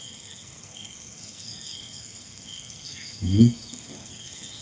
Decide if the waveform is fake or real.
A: fake